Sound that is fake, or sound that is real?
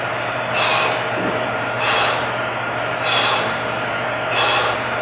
fake